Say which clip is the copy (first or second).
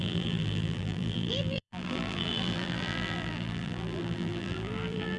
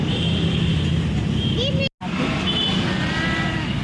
first